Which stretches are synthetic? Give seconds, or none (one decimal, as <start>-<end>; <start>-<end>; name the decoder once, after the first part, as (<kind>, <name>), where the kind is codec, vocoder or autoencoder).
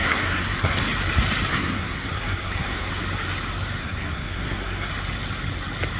0.0-0.8 (codec, SNAC); 1.5-2.9; 3.8-4.9